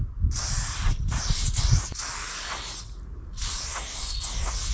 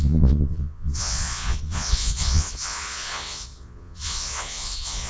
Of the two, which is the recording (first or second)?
first